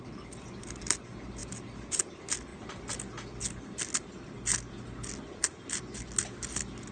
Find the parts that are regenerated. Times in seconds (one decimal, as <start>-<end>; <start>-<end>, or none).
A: none